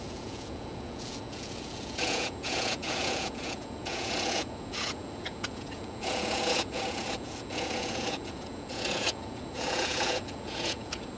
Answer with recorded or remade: remade